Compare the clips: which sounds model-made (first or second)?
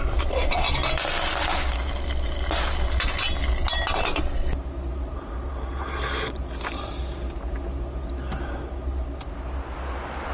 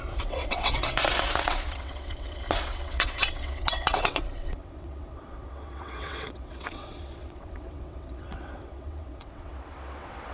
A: second